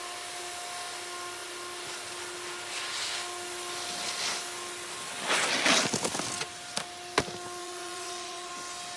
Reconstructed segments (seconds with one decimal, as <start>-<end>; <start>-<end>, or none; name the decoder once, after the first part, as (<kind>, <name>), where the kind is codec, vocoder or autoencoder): 7.6-8.5 (vocoder, Vocos)